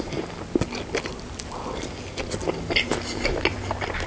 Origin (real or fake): real